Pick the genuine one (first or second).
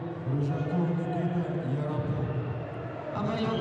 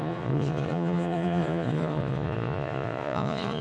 first